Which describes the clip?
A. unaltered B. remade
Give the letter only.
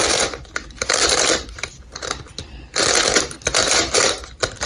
B